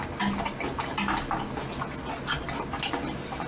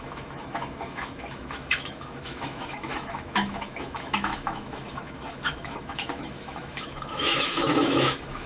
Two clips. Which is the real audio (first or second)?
first